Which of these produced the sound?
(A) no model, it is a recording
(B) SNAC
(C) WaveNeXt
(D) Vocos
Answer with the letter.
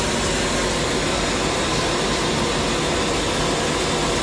A